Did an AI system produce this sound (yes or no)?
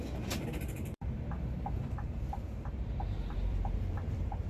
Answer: yes